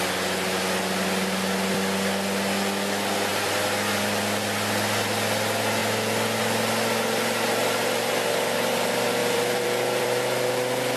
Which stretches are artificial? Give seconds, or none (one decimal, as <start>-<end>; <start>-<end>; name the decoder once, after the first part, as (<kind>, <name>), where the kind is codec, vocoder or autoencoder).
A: 3.3-4.0 (vocoder, BigVGAN v2); 9.2-10.5

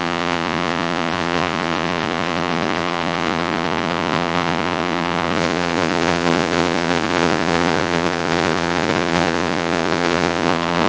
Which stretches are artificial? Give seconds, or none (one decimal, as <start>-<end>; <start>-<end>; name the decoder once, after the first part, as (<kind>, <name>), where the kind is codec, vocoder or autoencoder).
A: 0.0-10.9 (vocoder, Vocos)

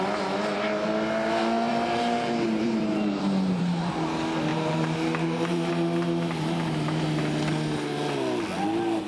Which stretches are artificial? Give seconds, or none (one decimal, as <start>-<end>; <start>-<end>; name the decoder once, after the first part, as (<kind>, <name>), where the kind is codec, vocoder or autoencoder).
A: 1.7-3.9 (vocoder, BigVGAN v2); 4.5-5.7